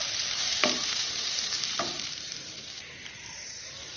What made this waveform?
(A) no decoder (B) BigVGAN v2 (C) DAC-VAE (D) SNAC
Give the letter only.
B